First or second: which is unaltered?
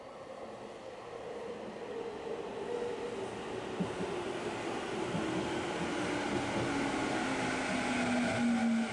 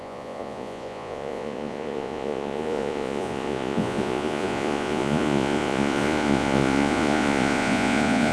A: first